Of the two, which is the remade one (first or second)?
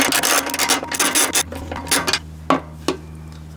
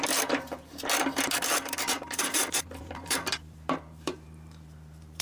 second